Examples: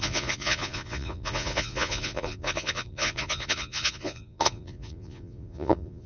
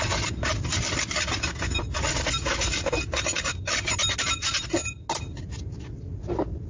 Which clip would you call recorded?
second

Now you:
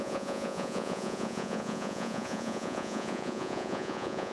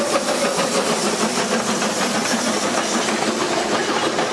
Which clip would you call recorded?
second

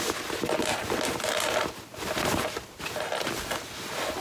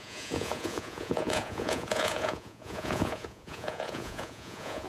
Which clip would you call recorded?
first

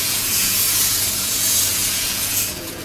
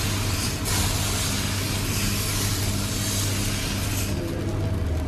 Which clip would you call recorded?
second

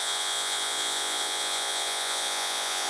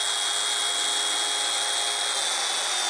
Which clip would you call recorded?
second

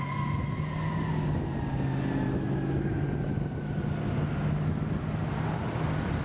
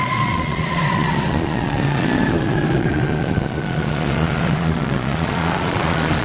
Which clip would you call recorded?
first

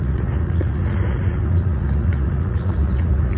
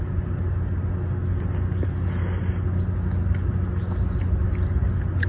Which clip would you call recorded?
second